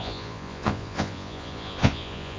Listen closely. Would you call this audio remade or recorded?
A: remade